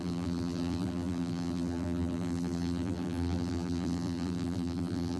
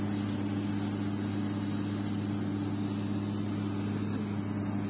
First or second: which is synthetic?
first